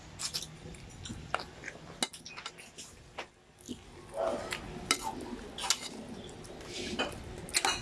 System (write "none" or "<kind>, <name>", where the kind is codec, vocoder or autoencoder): none